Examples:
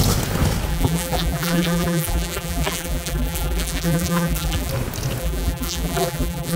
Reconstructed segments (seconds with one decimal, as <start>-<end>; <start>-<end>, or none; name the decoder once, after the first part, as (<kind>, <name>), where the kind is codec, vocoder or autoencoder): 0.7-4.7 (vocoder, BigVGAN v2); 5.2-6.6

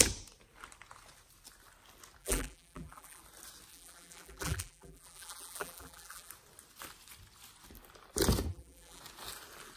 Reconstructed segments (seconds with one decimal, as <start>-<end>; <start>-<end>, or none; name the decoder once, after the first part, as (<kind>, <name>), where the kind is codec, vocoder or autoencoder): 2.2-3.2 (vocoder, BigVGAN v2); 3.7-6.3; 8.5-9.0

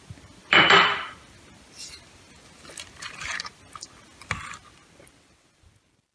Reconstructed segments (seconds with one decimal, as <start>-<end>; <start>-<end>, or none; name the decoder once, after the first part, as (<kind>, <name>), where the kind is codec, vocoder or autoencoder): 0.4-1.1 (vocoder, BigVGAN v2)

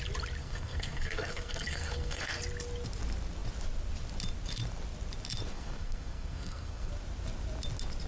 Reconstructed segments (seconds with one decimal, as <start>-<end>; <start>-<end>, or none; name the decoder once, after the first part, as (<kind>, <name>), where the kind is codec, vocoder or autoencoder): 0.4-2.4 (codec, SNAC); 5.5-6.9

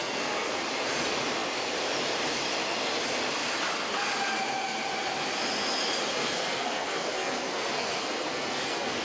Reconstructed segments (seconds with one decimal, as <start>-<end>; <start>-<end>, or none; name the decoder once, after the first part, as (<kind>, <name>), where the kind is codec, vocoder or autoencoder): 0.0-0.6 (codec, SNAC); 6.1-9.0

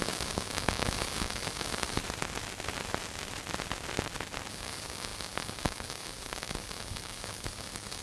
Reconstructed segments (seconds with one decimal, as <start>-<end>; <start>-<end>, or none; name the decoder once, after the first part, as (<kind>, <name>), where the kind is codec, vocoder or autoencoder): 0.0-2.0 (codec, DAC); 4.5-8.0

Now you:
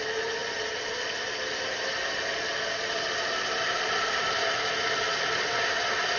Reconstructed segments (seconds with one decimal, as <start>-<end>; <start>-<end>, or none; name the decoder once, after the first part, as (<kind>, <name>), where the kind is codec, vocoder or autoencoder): 0.4-2.6 (vocoder, BigVGAN v2)

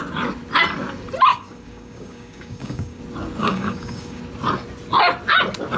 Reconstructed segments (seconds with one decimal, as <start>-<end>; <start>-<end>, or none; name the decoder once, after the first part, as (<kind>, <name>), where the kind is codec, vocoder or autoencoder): 1.3-3.0 (codec, DAC); 3.4-4.2